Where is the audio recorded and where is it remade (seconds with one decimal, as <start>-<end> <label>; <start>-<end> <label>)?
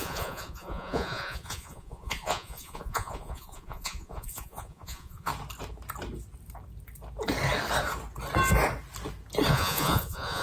0.0-5.3 remade; 5.3-9.5 recorded; 9.5-10.4 remade